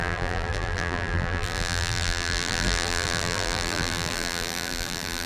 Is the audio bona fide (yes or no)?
no